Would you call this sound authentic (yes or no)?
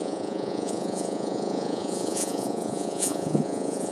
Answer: no